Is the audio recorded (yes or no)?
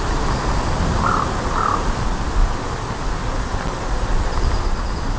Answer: yes